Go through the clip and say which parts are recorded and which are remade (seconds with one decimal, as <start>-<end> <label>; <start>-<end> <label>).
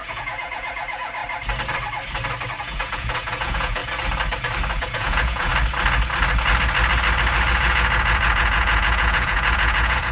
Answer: 0.0-1.2 remade; 1.2-2.6 recorded; 2.6-3.8 remade; 3.8-4.7 recorded; 4.7-5.5 remade; 5.5-7.5 recorded; 7.5-10.1 remade